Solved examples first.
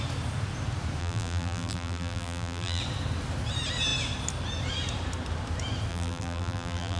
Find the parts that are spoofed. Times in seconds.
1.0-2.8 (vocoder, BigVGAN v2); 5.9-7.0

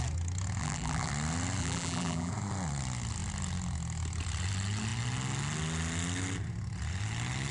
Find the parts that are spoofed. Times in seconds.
0.6-1.1 (vocoder, BigVGAN v2); 1.6-2.3